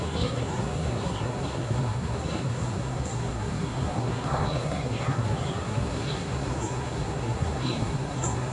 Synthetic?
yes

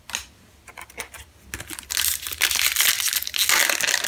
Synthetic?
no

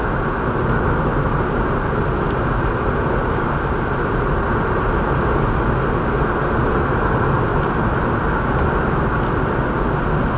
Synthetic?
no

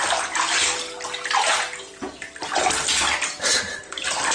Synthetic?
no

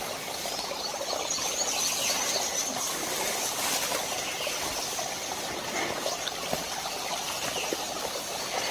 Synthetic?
no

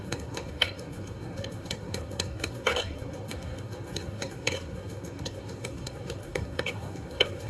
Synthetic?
yes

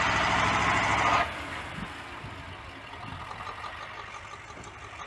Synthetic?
no